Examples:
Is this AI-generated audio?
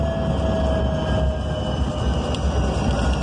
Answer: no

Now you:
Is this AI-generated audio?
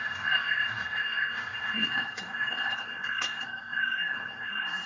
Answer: yes